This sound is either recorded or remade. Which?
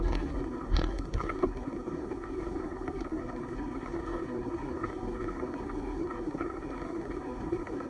remade